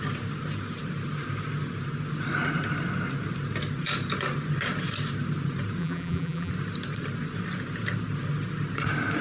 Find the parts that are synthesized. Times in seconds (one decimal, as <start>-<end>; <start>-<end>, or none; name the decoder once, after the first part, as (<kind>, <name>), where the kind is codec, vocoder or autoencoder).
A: 5.8-6.5 (vocoder, BigVGAN v2)